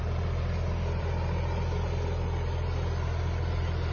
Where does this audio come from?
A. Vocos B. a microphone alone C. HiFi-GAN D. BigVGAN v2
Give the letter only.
B